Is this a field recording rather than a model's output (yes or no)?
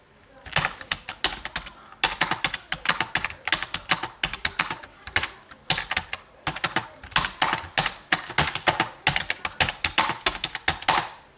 yes